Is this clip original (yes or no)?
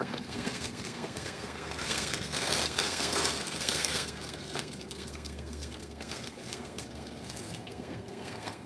no